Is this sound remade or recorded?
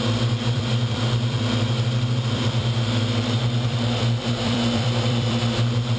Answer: remade